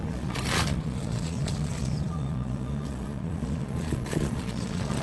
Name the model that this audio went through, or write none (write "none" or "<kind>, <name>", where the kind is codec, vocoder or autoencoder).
vocoder, Vocos